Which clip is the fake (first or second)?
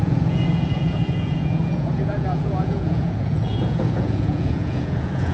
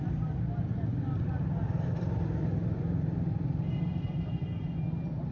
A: first